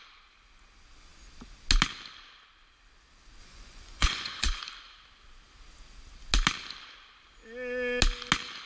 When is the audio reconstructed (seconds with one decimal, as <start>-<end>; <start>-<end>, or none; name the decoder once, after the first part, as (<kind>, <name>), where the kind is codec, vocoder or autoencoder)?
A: 3.4-4.6 (vocoder, Vocos)